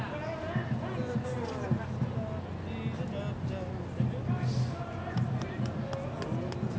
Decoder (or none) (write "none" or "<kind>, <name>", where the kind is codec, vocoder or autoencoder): none